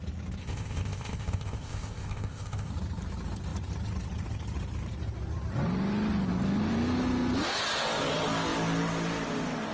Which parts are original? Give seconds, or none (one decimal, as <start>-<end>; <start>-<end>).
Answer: 0.0-0.4; 2.7-9.7